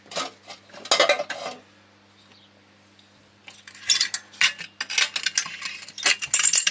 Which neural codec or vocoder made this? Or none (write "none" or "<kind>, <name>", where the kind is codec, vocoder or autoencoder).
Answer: none